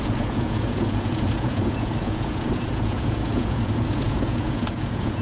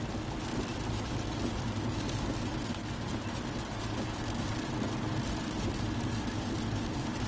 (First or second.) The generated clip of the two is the first